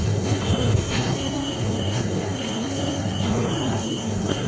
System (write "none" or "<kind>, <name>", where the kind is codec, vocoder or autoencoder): codec, SNAC